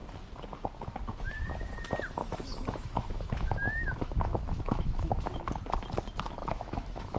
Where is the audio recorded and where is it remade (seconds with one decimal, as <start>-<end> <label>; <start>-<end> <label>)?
0.0-2.2 recorded; 2.2-5.4 remade; 5.4-6.4 recorded; 6.4-7.2 remade